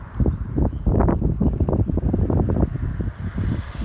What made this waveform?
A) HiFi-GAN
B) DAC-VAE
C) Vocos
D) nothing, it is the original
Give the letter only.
D